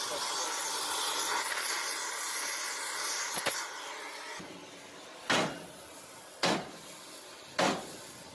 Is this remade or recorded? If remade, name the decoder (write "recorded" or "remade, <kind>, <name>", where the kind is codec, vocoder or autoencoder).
recorded